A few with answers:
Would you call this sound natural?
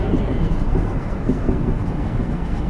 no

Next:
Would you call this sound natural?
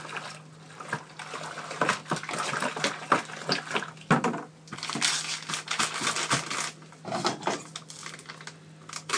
yes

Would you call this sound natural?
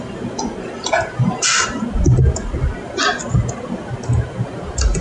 yes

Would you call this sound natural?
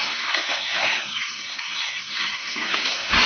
no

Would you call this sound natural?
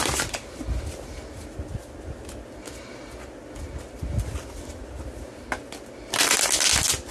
yes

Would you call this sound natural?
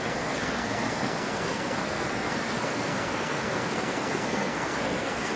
no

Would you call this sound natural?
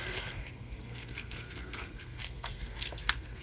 no